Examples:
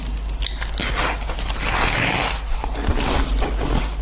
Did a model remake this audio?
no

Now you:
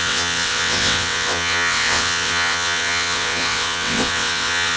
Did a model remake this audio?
yes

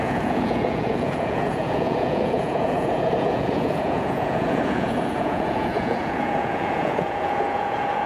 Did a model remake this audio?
yes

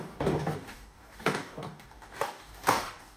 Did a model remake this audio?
yes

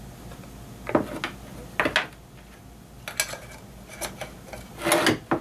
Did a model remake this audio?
no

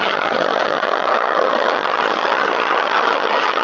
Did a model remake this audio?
yes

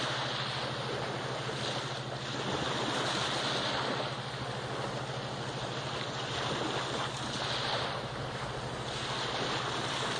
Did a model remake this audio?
no